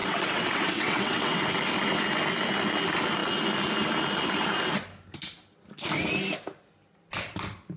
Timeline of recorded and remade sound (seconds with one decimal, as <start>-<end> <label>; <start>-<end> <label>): 0.0-1.4 remade; 1.4-7.8 recorded